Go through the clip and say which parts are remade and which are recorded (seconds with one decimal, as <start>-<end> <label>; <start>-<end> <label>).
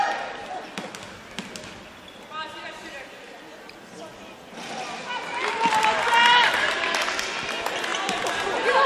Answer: 0.0-8.9 recorded